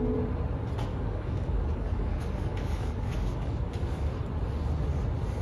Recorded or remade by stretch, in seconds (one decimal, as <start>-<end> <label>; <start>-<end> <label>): 0.0-0.9 recorded; 0.9-4.1 remade; 4.1-5.4 recorded

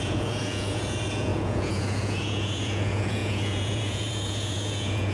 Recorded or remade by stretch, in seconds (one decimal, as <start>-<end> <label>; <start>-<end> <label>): 0.0-5.1 remade

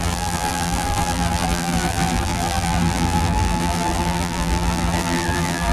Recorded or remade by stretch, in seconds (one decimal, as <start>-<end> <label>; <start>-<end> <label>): 0.0-5.7 remade

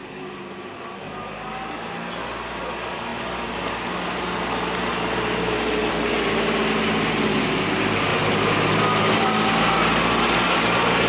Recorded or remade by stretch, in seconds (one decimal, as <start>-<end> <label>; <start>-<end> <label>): 0.0-11.1 recorded